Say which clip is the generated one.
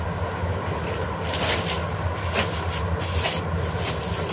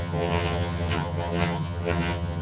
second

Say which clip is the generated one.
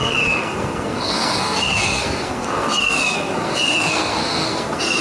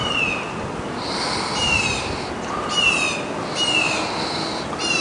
first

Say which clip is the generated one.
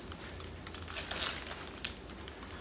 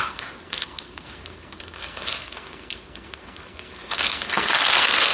second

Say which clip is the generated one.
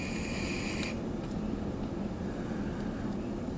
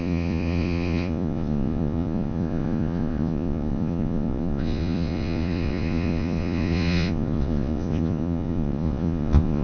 second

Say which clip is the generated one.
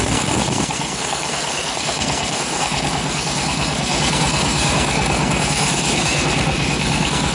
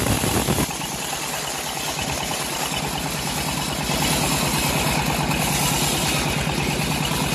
first